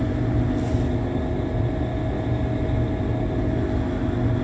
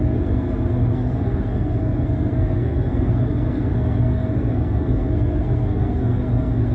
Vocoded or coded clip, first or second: second